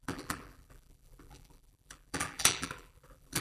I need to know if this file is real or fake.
fake